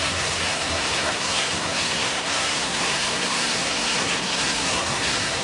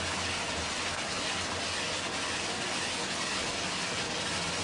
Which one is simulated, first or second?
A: first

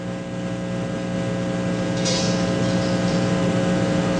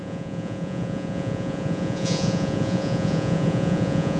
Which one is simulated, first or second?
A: second